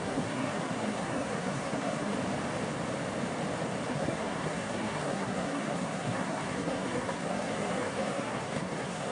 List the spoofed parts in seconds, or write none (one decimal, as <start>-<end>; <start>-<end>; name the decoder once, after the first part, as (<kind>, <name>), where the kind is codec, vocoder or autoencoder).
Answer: 0.0-2.1 (codec, SNAC); 3.9-9.1